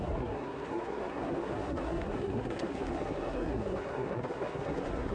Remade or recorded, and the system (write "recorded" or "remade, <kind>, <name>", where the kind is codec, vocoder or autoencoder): remade, codec, SNAC